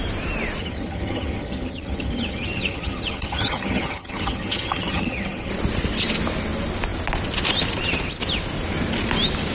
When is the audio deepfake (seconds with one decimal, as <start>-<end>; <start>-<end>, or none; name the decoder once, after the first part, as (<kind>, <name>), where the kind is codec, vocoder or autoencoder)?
0.6-5.5 (vocoder, HiFi-GAN)